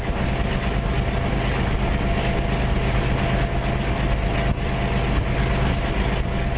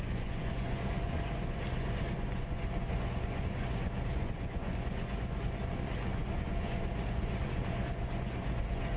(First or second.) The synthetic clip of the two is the second